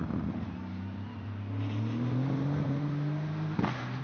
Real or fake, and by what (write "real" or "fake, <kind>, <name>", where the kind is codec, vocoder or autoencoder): real